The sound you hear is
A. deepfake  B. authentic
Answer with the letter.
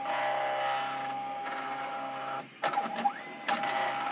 B